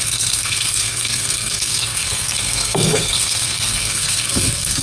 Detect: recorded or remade remade